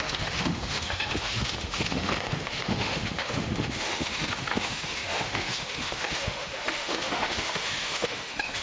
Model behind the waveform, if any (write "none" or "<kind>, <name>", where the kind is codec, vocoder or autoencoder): autoencoder, DAC-VAE